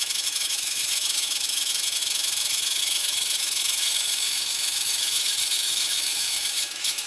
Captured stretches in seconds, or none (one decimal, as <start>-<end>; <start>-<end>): none